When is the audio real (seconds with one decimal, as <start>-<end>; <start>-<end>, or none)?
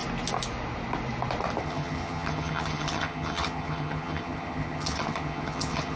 0.0-1.6